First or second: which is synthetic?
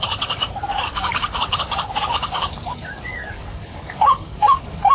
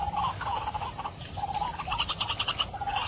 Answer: first